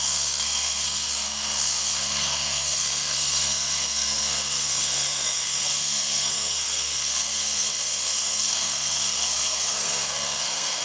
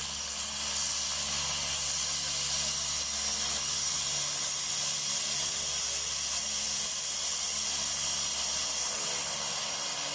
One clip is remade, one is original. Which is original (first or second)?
second